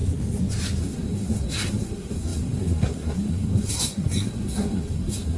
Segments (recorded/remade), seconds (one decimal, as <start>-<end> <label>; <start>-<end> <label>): 0.0-0.8 recorded; 0.8-5.4 remade